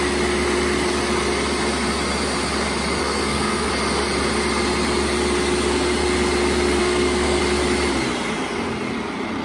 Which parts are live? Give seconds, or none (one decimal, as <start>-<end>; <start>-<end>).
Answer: 0.0-3.0; 3.7-6.8; 7.4-9.4